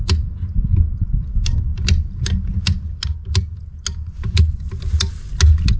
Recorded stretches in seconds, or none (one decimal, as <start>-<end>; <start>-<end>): 0.0-5.8